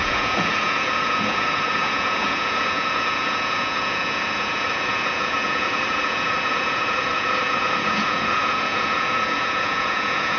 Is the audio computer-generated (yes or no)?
yes